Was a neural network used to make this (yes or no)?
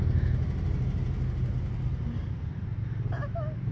no